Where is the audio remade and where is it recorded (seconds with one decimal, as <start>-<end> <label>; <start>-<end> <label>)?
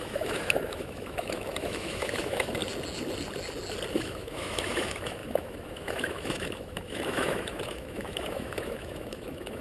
0.0-2.6 remade; 2.6-3.9 recorded; 3.9-9.6 remade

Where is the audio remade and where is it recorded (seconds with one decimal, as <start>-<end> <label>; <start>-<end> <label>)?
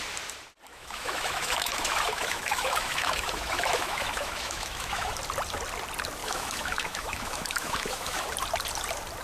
0.0-0.7 recorded; 0.7-5.2 remade; 5.2-6.2 recorded; 6.2-8.3 remade; 8.3-9.2 recorded